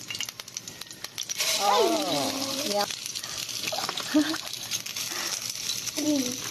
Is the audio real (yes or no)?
no